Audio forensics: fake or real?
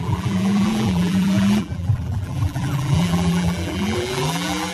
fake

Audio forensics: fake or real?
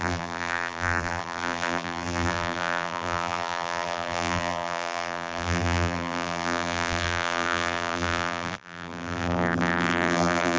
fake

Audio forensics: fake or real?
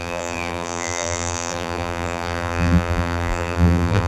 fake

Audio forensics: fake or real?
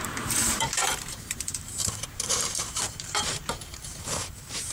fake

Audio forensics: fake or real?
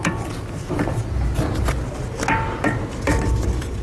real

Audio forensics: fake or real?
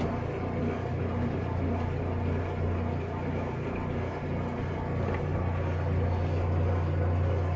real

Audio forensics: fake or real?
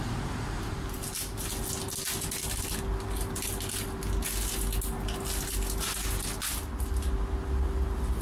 real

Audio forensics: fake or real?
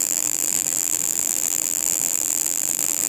fake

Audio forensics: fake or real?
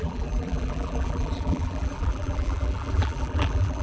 fake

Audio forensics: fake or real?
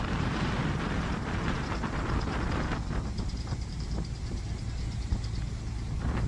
fake